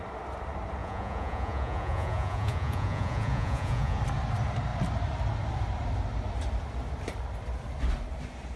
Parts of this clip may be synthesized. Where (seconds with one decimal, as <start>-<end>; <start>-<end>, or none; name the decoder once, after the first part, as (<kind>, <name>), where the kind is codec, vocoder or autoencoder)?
0.8-4.0 (vocoder, Vocos)